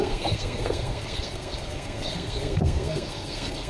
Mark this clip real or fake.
fake